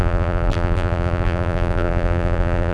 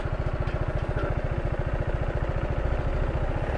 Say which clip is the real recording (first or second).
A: second